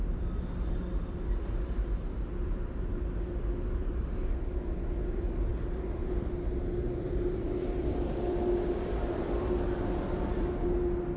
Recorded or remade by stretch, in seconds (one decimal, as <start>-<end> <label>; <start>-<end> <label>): 0.0-11.2 recorded